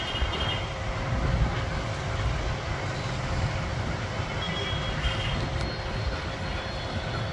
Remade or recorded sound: recorded